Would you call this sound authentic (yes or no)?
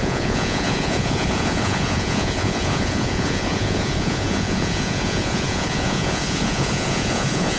no